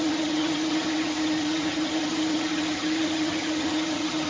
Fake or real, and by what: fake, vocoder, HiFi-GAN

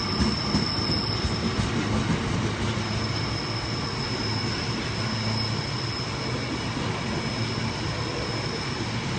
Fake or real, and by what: real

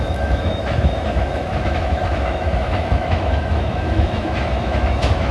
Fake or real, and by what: fake, autoencoder, DAC-VAE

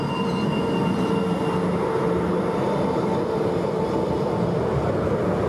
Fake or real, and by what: real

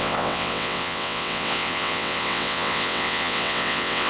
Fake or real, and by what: fake, vocoder, WaveNeXt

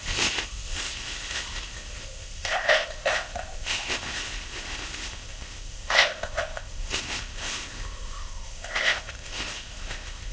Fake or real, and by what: fake, codec, ZipCodec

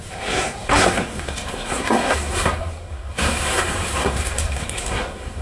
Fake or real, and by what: fake, codec, SNAC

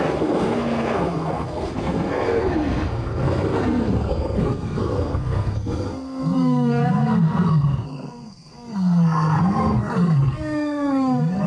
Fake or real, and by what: fake, codec, SNAC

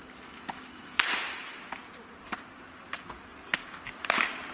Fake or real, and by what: real